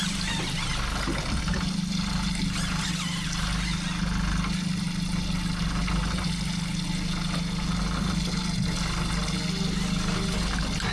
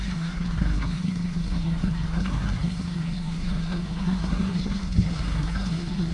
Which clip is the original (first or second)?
first